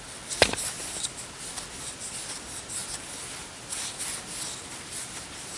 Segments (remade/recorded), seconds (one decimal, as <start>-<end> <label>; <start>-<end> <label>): 0.0-5.6 recorded